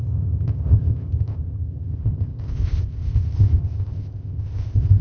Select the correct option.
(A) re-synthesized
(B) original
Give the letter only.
A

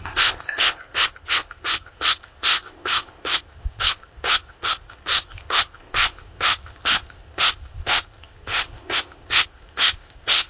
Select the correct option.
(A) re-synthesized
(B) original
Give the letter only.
A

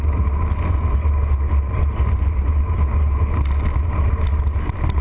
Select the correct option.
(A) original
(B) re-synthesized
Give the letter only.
A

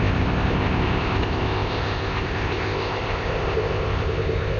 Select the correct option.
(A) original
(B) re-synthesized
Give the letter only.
B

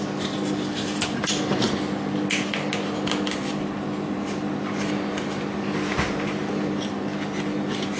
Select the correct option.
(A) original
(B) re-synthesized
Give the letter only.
A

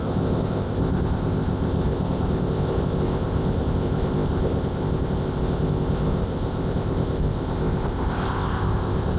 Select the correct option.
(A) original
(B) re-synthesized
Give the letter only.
B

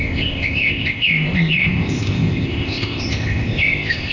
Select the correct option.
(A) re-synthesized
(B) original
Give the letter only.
A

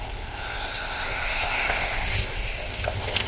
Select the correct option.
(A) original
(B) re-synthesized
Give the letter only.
B